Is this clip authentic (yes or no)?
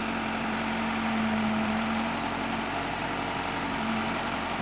no